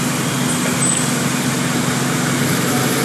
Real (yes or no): yes